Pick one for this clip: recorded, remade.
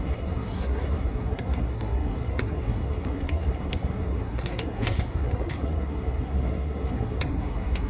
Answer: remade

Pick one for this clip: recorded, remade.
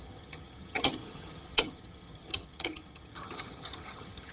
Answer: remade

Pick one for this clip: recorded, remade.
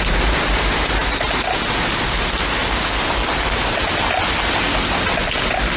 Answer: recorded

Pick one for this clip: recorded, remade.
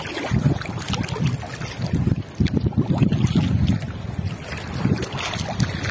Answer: recorded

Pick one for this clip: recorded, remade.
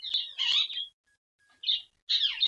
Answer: recorded